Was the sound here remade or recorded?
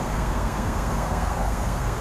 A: remade